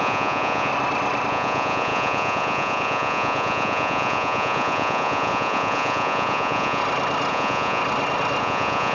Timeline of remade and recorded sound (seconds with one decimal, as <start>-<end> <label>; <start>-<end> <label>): 0.0-0.7 remade; 0.7-1.3 recorded; 1.3-6.8 remade; 6.8-7.3 recorded; 7.3-7.8 remade; 7.8-8.4 recorded; 8.4-8.9 remade